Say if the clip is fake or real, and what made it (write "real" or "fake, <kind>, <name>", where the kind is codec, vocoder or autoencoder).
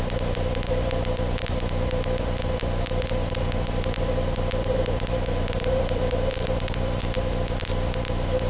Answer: fake, vocoder, BigVGAN v2